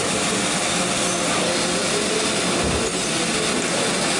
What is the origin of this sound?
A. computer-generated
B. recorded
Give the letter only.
B